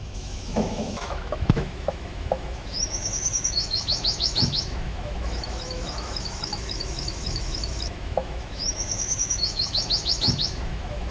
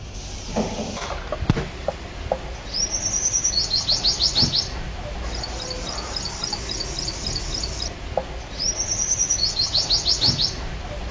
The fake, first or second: first